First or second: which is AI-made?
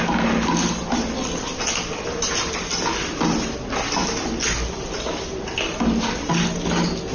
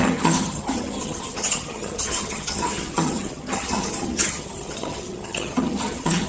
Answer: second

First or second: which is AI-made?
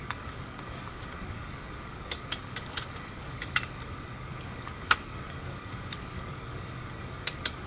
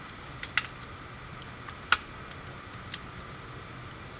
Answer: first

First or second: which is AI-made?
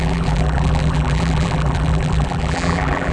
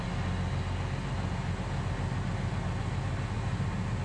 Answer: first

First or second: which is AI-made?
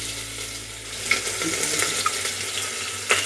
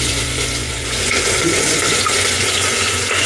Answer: second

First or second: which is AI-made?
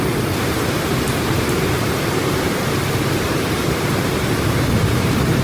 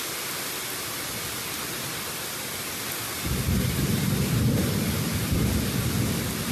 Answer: first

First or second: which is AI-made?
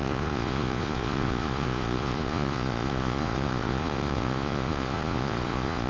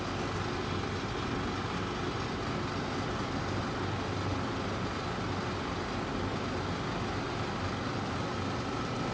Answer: first